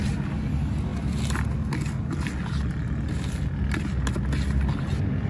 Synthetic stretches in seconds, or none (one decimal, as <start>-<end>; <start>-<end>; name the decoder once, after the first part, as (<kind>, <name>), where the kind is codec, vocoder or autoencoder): none